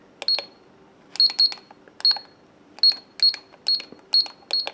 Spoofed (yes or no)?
no